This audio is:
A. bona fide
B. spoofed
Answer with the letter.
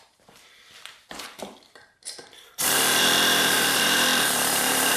B